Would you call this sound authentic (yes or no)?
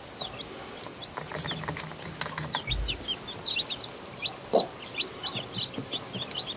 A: yes